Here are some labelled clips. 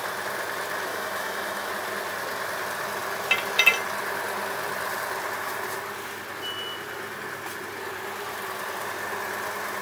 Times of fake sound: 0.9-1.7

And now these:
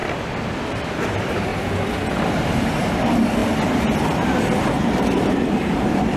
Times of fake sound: 0.7-1.5; 2.5-3.4; 5.0-6.2

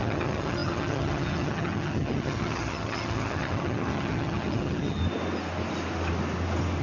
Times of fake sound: 0.0-5.0

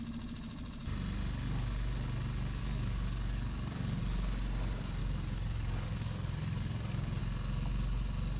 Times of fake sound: 2.6-4.0; 5.0-7.2

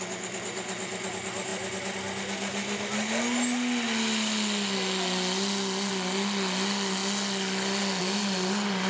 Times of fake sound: none

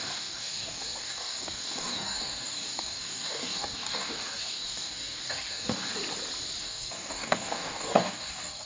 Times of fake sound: 0.0-5.9; 6.6-8.7

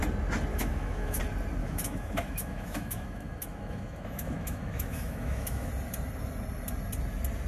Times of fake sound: 0.5-1.2; 1.6-5.7